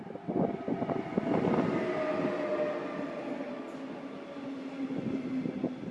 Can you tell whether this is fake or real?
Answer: real